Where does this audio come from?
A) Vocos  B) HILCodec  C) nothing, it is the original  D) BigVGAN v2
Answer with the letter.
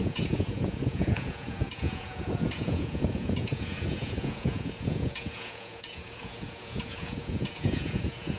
A